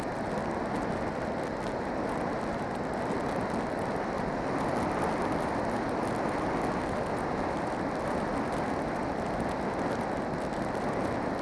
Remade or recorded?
recorded